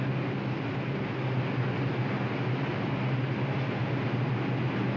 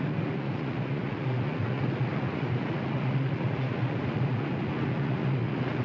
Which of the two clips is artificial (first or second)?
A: second